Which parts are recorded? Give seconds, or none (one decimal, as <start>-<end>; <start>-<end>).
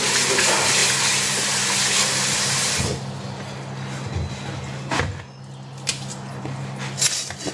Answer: 0.0-7.5